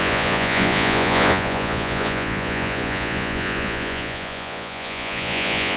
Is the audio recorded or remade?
remade